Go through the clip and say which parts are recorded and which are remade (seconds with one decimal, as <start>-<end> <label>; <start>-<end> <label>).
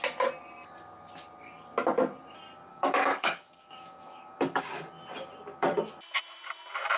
0.0-2.7 recorded; 2.7-4.6 remade; 4.6-7.0 recorded